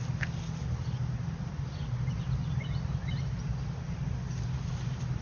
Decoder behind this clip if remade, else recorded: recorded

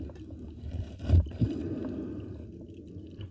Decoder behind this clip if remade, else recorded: recorded